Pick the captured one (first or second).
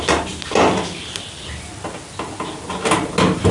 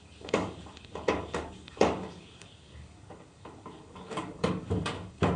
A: first